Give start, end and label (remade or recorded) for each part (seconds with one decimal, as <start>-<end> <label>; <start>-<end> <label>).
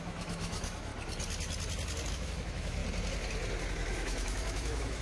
0.0-0.9 remade; 0.9-2.1 recorded; 2.1-2.8 remade; 2.8-3.7 recorded; 3.7-5.0 remade